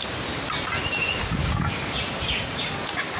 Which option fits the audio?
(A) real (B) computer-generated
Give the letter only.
A